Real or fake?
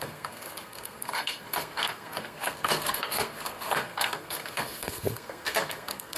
fake